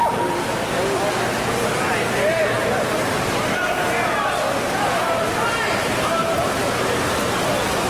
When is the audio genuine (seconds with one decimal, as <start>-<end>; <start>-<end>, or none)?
0.0-7.9